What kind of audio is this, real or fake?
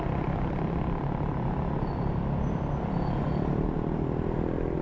fake